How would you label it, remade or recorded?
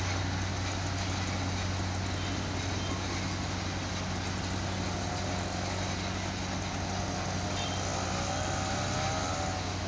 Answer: recorded